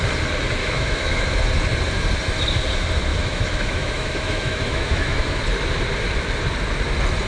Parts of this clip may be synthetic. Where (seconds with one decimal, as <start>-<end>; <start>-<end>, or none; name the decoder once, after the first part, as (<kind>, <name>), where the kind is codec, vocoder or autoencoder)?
0.6-1.4 (autoencoder, DAC-VAE); 3.1-5.4